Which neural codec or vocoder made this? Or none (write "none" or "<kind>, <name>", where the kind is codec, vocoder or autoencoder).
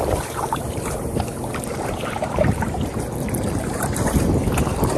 vocoder, BigVGAN v2